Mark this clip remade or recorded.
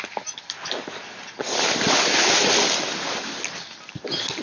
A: recorded